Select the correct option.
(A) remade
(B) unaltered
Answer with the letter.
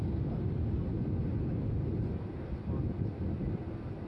B